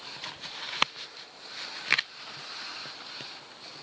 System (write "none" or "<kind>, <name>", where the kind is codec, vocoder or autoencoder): none